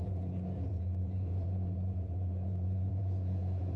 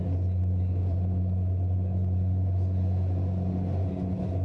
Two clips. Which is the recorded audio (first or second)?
second